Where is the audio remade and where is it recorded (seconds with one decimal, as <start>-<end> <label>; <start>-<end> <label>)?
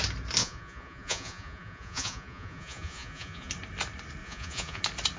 0.0-0.4 recorded; 0.4-3.5 remade; 3.5-4.2 recorded; 4.2-4.8 remade; 4.8-5.2 recorded